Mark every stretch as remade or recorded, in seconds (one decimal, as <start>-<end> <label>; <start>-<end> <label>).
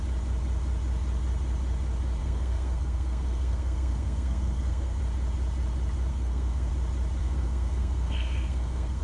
0.0-2.2 recorded; 2.2-5.0 remade; 5.0-6.1 recorded; 6.1-6.7 remade; 6.7-7.2 recorded; 7.2-9.0 remade